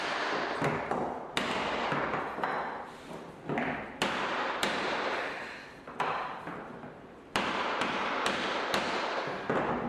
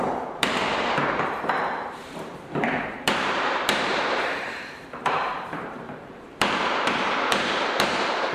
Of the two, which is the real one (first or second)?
first